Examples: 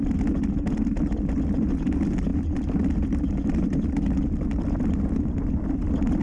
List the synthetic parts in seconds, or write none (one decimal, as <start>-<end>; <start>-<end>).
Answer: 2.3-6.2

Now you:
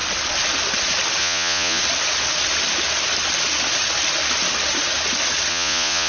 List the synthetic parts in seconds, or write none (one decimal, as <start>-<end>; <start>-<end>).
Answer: 1.2-1.8; 5.5-6.1

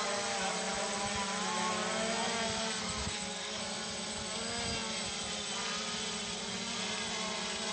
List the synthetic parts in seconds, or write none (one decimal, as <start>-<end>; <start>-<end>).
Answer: 2.8-3.6

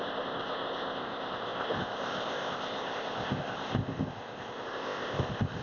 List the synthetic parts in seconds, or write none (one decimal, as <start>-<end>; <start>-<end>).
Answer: 0.0-5.6